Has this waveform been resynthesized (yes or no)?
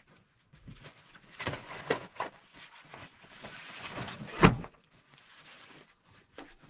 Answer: yes